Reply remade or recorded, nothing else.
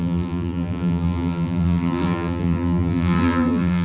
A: remade